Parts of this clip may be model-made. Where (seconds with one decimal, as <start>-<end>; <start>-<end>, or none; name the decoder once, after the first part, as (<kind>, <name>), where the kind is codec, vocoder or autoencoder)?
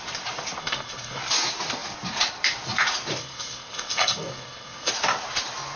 0.6-1.2 (codec, SNAC); 3.2-4.9